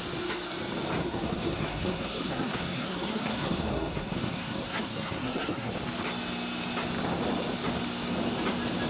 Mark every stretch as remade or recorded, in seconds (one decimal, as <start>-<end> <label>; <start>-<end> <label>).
0.0-1.0 recorded; 1.0-5.7 remade; 5.7-8.9 recorded